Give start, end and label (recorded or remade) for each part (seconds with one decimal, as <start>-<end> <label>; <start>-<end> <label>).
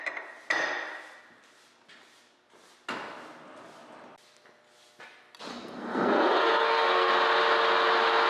0.0-5.5 recorded; 5.5-7.1 remade; 7.1-8.3 recorded